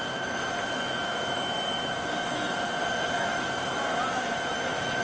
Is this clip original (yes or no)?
no